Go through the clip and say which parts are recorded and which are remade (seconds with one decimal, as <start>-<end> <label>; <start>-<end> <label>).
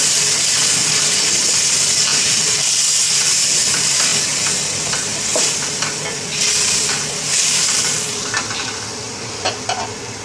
0.0-2.1 recorded; 2.1-2.8 remade; 2.8-10.2 recorded